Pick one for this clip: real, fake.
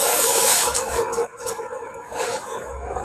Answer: fake